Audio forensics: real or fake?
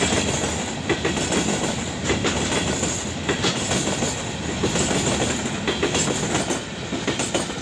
real